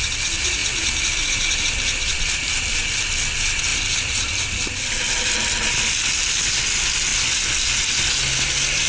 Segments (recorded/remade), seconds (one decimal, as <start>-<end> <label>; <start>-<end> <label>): 0.0-8.9 recorded